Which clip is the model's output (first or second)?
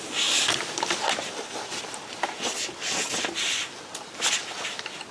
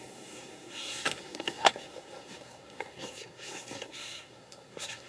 second